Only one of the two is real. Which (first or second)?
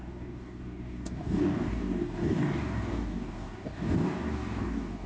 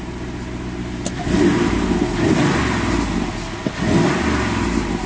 second